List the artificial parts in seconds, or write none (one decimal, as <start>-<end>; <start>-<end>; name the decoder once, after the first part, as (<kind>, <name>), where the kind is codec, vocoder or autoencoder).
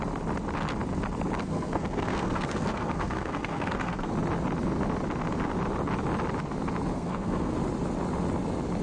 1.4-4.1 (codec, SNAC); 6.9-7.5